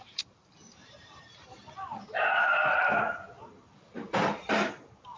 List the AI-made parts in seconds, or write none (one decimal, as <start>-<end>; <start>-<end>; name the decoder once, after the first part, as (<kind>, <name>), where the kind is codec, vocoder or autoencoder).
0.0-1.6 (vocoder, BigVGAN v2); 3.5-5.2